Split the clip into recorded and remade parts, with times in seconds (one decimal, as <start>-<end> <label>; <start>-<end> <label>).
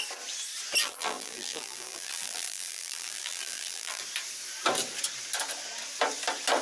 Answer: 0.0-0.8 recorded; 0.8-4.0 remade; 4.0-6.6 recorded